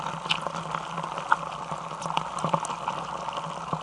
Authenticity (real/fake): real